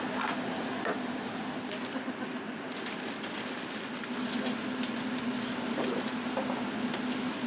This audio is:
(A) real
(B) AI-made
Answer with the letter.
A